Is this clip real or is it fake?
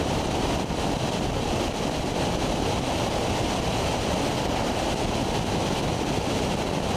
real